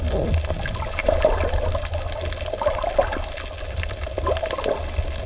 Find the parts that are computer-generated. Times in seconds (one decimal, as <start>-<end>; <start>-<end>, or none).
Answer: none